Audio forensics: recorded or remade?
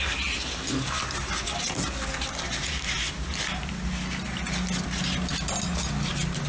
recorded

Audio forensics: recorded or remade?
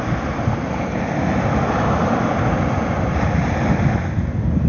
recorded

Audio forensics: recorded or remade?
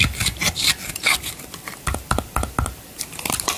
recorded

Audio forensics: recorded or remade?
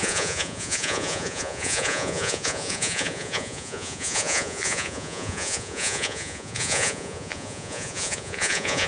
remade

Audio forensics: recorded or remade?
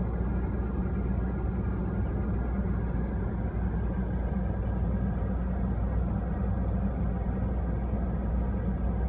recorded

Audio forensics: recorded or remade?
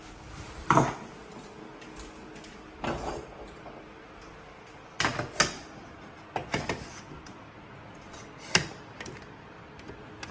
recorded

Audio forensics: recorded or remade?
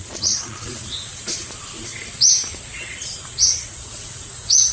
remade